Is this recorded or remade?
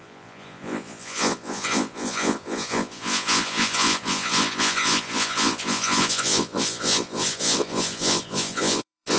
remade